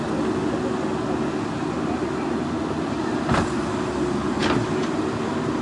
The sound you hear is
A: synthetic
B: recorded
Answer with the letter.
B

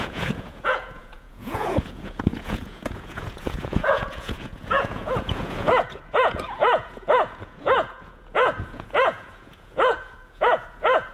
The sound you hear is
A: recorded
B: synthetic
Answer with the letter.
B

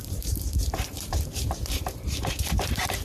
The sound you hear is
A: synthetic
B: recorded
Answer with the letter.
A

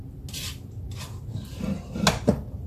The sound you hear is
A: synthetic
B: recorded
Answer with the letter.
B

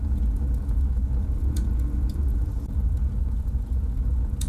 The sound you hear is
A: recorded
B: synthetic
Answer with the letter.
B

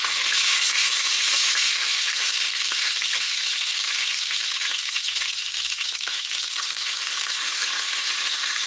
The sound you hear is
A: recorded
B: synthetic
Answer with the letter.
B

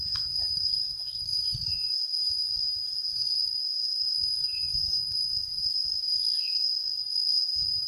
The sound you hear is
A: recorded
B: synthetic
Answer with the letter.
B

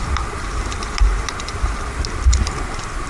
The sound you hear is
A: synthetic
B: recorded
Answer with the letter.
A